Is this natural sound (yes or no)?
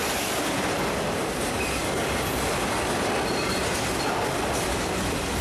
no